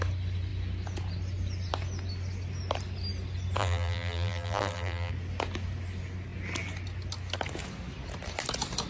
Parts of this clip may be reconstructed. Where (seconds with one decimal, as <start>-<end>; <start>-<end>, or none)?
3.6-5.1